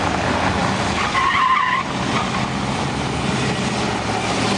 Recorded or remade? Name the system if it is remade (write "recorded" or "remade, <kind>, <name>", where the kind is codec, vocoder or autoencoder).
recorded